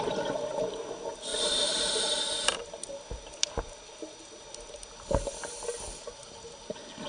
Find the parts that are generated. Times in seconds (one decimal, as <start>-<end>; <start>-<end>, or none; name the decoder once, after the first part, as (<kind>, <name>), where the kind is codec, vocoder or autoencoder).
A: none